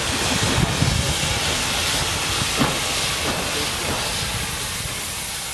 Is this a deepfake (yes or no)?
no